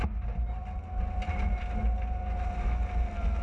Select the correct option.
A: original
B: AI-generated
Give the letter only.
A